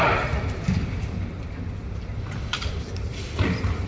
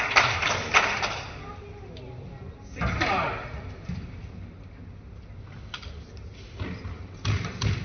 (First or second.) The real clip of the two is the second